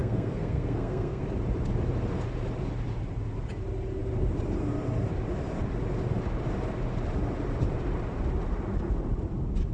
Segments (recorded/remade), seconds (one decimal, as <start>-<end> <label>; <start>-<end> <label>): 0.0-1.2 remade; 1.2-9.7 recorded